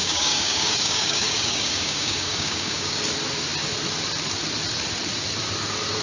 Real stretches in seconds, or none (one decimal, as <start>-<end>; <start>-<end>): 3.0-6.0